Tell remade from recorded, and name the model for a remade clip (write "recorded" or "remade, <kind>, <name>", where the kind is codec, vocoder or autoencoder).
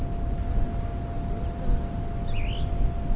recorded